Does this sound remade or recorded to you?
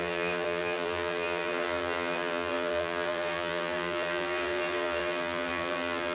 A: remade